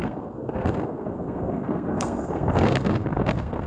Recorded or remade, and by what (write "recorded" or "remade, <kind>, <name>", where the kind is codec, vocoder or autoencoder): remade, codec, SNAC